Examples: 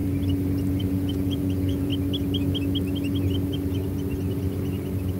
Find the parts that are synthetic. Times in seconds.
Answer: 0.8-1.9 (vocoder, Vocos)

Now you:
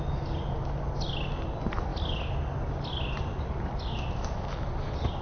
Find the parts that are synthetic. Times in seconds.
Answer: none